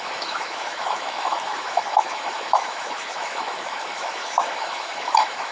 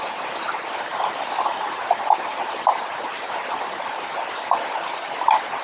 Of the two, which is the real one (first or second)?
second